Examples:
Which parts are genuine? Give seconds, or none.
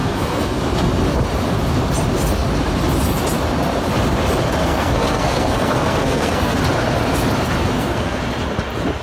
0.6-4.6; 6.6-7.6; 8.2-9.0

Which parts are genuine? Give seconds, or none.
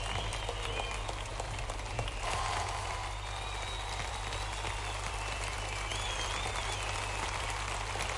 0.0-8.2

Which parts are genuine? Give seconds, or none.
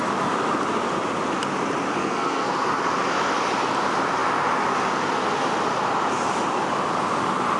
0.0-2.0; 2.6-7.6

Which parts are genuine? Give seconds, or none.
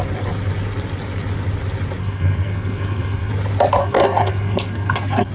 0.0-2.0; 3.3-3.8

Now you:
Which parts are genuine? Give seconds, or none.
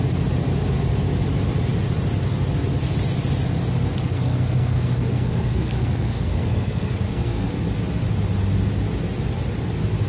0.0-4.0; 7.5-10.1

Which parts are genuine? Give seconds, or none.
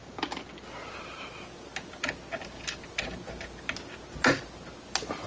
0.0-5.3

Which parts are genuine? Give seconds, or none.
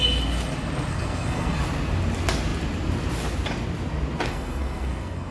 0.0-0.9; 1.6-4.3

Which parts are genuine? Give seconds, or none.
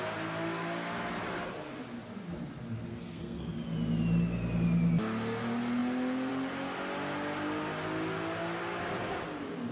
0.0-2.9; 3.5-9.7